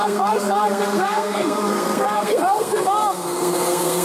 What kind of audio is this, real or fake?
fake